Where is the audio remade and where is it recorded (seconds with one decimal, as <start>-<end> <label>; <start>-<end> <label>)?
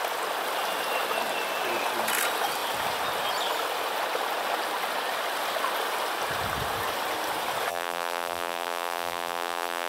0.0-7.7 recorded; 7.7-9.9 remade